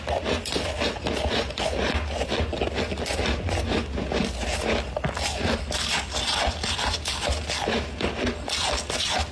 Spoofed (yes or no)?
no